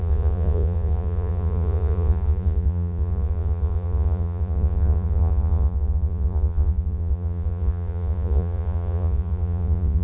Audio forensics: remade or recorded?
remade